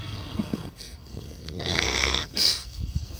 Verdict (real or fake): fake